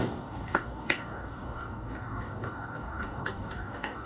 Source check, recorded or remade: remade